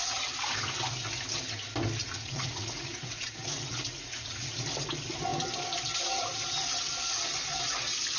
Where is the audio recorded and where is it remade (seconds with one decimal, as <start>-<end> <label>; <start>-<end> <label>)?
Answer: 0.0-2.0 recorded; 2.0-4.6 remade; 4.6-8.2 recorded